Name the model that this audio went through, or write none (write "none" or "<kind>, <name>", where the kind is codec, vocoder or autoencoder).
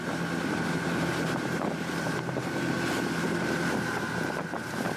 vocoder, BigVGAN v2